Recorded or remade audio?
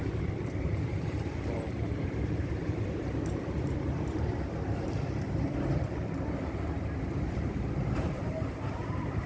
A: remade